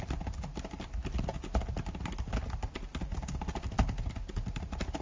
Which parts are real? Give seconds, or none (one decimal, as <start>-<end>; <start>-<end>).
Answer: 0.0-5.0